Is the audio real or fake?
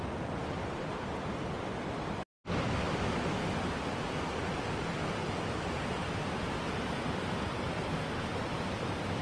real